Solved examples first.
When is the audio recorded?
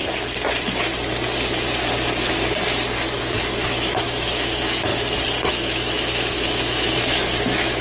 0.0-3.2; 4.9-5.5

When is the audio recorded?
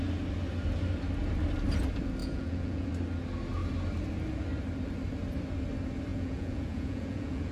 0.0-2.2; 2.9-6.1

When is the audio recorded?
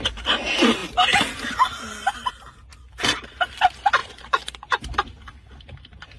0.0-4.0; 4.9-6.2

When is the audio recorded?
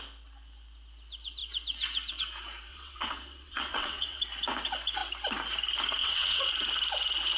0.0-2.7; 4.2-6.0; 6.5-7.4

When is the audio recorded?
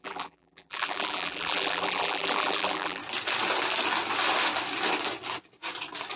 3.0-6.2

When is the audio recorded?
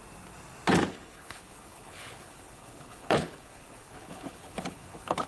0.0-0.9